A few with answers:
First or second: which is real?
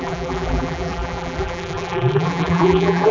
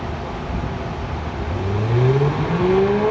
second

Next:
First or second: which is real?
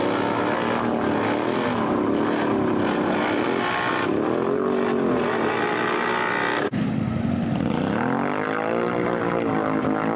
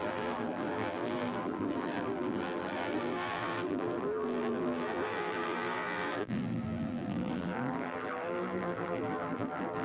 first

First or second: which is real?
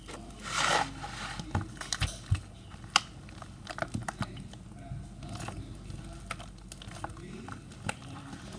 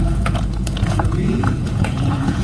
first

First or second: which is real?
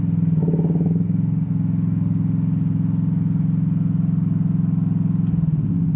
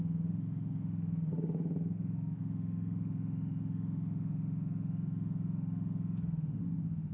first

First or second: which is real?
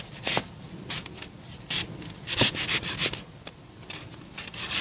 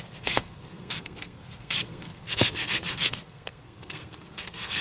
first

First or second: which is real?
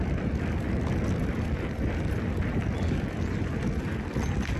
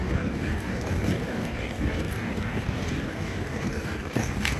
first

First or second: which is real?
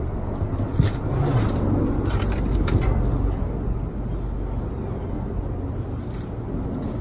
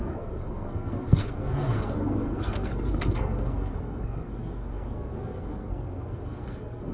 first